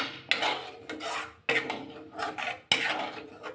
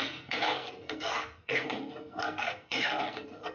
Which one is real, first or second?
first